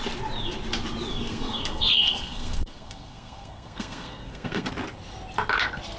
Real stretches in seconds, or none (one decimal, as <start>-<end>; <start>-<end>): 0.0-1.1; 4.7-6.0